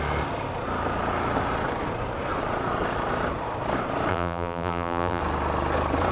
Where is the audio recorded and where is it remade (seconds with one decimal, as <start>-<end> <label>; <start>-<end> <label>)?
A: 0.0-4.1 recorded; 4.1-5.2 remade; 5.2-6.1 recorded